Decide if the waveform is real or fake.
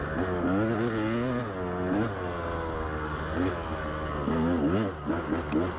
real